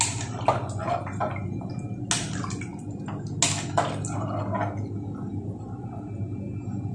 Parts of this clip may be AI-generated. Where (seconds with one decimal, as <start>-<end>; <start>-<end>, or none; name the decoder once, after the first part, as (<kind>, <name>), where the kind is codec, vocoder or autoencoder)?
none